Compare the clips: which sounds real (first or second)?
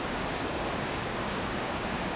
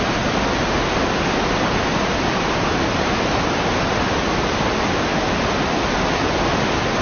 second